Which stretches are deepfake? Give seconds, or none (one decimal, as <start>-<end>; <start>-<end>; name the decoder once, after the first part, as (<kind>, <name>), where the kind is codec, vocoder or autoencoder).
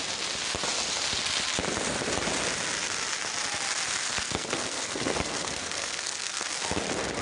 4.1-6.8 (codec, SNAC)